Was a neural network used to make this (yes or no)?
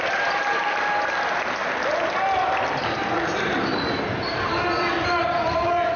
no